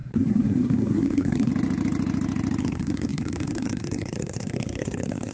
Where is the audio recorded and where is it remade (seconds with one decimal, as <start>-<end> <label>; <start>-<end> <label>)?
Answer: 0.0-1.5 remade; 1.5-2.6 recorded; 2.6-5.3 remade